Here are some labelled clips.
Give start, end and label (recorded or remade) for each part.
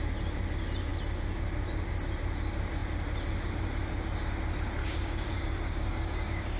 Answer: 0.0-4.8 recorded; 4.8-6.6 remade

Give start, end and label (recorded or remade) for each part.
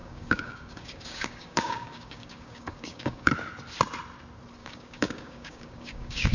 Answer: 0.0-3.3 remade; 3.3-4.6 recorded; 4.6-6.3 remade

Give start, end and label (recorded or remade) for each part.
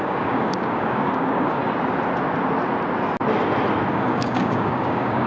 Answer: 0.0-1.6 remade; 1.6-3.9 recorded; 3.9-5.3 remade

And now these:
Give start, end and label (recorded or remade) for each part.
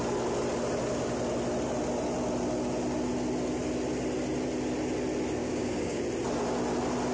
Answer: 0.0-5.4 recorded; 5.4-6.0 remade; 6.0-7.1 recorded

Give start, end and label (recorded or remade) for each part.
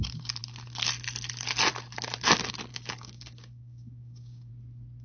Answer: 0.0-2.7 recorded; 2.7-4.5 remade; 4.5-5.0 recorded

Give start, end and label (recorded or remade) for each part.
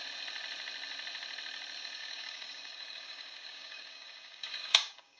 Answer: 0.0-2.0 recorded; 2.0-5.2 remade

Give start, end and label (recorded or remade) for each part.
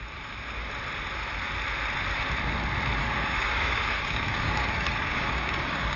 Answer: 0.0-3.0 recorded; 3.0-6.0 remade